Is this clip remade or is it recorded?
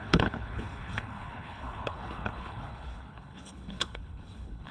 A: remade